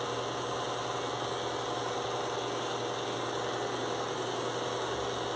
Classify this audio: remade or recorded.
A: recorded